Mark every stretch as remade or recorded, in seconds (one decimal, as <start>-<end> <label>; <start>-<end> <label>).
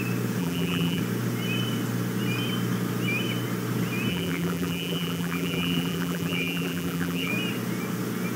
0.0-0.4 recorded; 0.4-1.0 remade; 1.0-4.1 recorded; 4.1-7.3 remade; 7.3-8.4 recorded